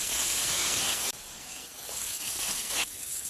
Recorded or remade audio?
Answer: remade